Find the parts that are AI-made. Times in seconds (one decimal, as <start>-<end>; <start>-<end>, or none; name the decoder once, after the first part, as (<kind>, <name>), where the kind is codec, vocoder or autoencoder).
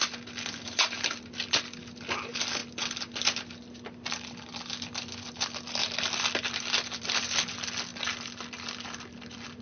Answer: none